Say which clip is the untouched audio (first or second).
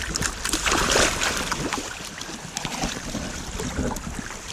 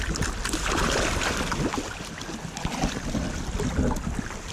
second